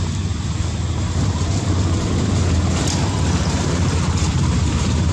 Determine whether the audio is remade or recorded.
remade